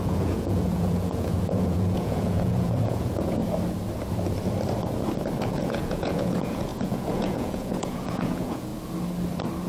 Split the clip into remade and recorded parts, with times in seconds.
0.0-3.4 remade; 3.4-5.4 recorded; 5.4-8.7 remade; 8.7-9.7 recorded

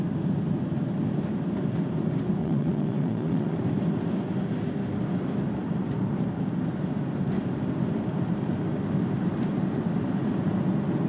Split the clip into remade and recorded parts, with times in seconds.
0.0-2.4 recorded; 2.4-3.6 remade; 3.6-11.1 recorded

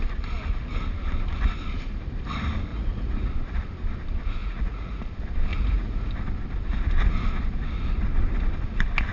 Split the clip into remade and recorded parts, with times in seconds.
0.0-2.7 recorded; 2.7-3.3 remade; 3.3-4.4 recorded; 4.4-5.0 remade; 5.0-5.5 recorded; 5.5-6.1 remade; 6.1-9.1 recorded

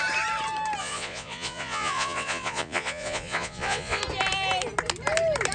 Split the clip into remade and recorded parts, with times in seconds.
0.0-0.8 recorded; 0.8-4.0 remade; 4.0-5.5 recorded